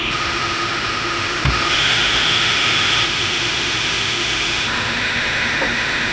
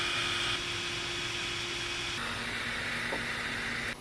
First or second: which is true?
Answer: second